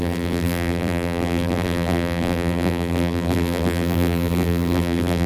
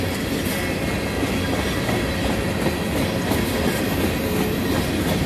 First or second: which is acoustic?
second